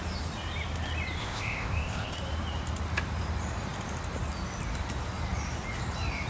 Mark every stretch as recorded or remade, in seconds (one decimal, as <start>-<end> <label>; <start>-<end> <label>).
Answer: 0.0-1.2 recorded; 1.2-2.1 remade; 2.1-6.3 recorded